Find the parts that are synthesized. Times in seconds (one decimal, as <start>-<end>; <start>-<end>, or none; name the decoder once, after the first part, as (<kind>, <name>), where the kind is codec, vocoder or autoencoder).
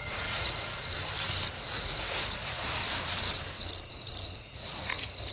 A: 0.0-0.7 (vocoder, Vocos); 1.5-2.8; 3.9-5.3